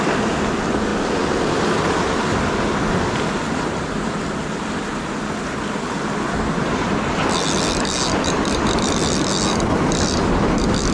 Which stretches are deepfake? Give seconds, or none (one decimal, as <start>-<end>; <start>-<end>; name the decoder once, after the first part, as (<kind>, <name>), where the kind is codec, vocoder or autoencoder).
none